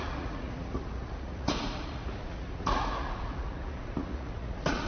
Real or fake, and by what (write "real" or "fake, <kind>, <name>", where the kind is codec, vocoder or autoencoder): fake, vocoder, Vocos